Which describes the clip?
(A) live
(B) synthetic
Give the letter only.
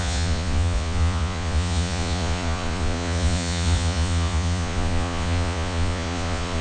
B